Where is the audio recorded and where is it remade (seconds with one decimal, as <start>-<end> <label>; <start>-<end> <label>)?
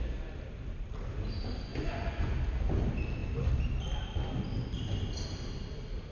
0.0-1.7 recorded; 1.7-2.3 remade; 2.3-6.1 recorded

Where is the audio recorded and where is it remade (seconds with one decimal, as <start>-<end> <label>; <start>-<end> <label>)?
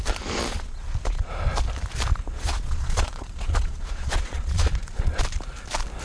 0.0-0.4 recorded; 0.4-1.3 remade; 1.3-2.1 recorded; 2.1-5.2 remade; 5.2-6.0 recorded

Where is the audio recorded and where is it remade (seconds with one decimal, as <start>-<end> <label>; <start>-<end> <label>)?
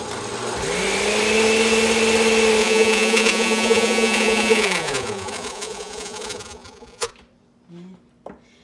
0.0-2.6 recorded; 2.6-7.1 remade; 7.1-8.6 recorded